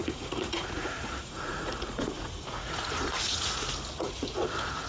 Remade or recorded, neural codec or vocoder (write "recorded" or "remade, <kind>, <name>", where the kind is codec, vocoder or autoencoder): remade, vocoder, Vocos